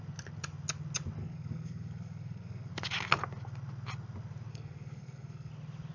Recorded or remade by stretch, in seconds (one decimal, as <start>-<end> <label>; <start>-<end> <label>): 0.0-1.2 recorded; 1.2-2.7 remade; 2.7-4.5 recorded; 4.5-5.5 remade; 5.5-5.9 recorded